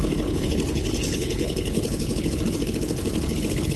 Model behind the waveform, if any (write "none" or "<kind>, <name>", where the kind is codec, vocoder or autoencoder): codec, HILCodec